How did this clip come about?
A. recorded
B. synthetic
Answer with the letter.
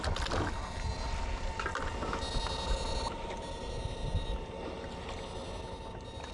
A